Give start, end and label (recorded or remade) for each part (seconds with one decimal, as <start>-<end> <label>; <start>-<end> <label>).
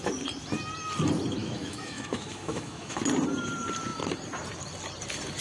0.0-1.4 recorded; 1.4-3.0 remade; 3.0-5.4 recorded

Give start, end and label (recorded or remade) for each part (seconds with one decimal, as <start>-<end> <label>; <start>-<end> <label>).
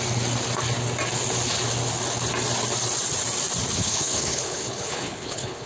0.0-3.8 recorded; 3.8-5.7 remade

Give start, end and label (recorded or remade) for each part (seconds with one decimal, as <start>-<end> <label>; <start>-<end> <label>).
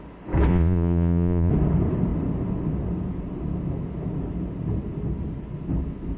0.0-0.5 recorded; 0.5-1.5 remade; 1.5-6.2 recorded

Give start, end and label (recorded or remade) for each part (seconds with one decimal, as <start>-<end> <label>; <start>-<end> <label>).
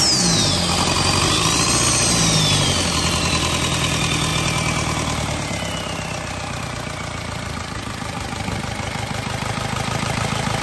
0.0-10.6 recorded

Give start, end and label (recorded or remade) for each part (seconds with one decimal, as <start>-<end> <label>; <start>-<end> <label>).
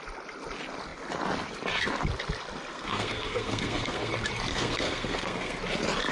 0.0-2.7 recorded; 2.7-4.1 remade; 4.1-4.5 recorded; 4.5-5.6 remade; 5.6-6.1 recorded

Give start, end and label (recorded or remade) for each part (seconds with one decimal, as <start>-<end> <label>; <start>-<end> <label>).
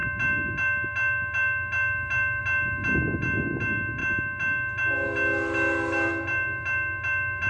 0.0-7.5 recorded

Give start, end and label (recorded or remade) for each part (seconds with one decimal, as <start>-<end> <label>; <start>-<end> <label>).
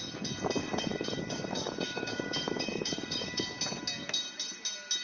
0.0-0.6 recorded; 0.6-3.6 remade; 3.6-5.0 recorded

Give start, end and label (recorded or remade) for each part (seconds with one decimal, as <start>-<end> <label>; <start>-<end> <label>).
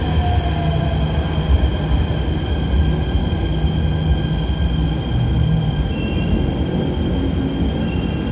0.0-8.3 recorded